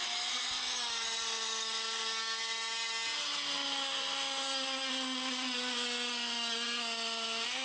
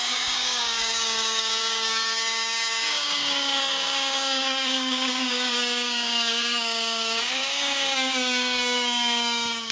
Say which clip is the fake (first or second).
second